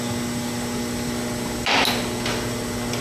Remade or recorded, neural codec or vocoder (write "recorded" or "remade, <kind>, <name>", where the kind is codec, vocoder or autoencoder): recorded